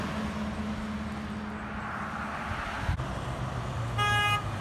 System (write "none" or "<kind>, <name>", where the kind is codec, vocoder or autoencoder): none